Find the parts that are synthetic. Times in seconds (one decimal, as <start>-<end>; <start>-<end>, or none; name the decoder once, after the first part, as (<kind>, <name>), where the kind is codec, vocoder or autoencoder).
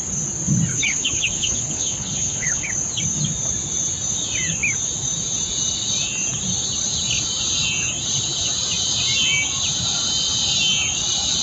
0.7-2.7 (codec, HILCodec)